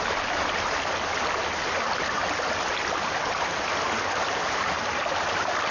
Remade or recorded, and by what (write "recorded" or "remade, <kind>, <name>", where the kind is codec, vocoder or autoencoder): recorded